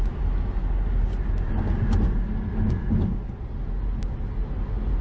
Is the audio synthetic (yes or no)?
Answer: no